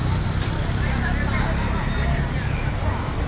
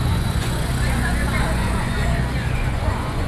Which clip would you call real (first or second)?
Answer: first